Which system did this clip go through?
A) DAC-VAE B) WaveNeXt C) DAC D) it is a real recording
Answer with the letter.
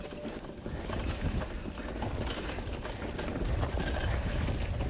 D